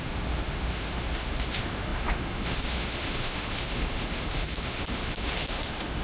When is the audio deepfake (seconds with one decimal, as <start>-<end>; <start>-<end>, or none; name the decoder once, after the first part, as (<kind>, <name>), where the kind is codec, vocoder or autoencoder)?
0.0-6.0 (autoencoder, DAC-VAE)